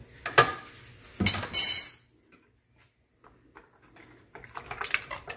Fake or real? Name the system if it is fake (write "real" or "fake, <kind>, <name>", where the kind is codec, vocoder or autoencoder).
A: real